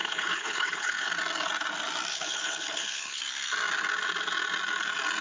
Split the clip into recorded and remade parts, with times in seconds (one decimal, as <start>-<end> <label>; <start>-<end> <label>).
0.0-1.1 remade; 1.1-2.1 recorded; 2.1-3.2 remade; 3.2-5.2 recorded